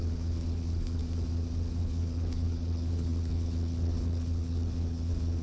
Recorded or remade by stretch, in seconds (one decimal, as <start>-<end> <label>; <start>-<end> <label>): 0.0-1.0 remade; 1.0-1.8 recorded; 1.8-5.4 remade